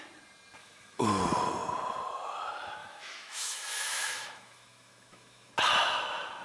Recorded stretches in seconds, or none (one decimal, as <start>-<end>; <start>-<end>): 0.0-0.6; 1.1-2.8; 5.5-6.4